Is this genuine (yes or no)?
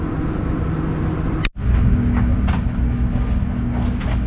yes